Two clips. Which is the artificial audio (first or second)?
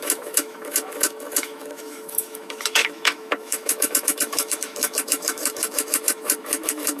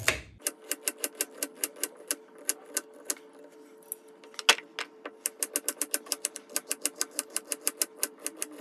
first